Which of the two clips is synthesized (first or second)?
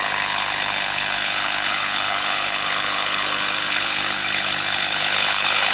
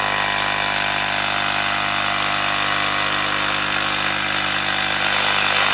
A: first